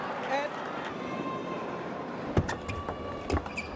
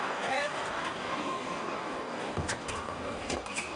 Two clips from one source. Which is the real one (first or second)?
first